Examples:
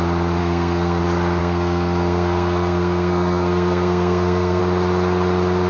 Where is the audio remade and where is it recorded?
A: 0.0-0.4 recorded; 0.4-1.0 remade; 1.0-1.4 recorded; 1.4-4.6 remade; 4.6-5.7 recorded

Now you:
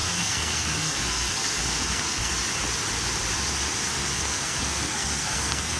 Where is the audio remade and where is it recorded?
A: 0.0-2.3 remade; 2.3-3.9 recorded; 3.9-5.8 remade

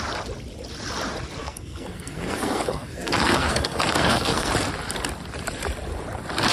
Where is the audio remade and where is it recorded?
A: 0.0-1.4 recorded; 1.4-4.5 remade; 4.5-6.5 recorded

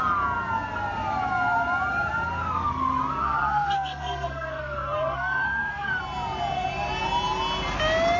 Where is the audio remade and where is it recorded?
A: 0.0-3.2 recorded; 3.2-6.0 remade; 6.0-8.2 recorded